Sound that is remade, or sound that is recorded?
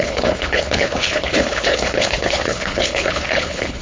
remade